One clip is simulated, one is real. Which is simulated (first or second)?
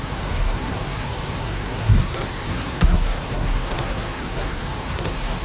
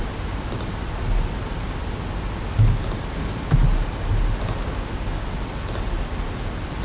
first